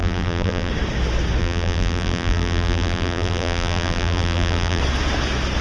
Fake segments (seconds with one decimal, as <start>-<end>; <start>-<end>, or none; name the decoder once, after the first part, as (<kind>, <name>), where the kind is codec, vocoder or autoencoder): 0.0-0.7 (vocoder, BigVGAN v2); 1.4-4.8